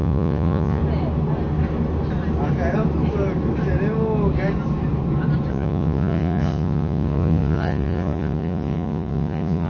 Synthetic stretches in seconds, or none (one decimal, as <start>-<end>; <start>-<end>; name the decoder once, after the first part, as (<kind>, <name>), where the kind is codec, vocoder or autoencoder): 0.0-0.8 (vocoder, Vocos); 5.5-9.7